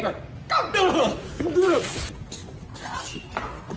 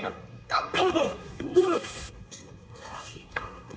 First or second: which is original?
first